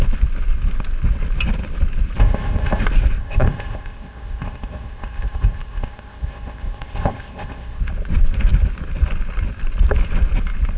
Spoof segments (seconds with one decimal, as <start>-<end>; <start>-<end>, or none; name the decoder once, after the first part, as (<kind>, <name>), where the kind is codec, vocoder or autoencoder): 2.2-2.8 (codec, ZipCodec); 3.2-7.8